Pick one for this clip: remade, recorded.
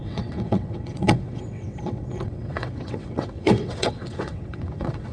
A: remade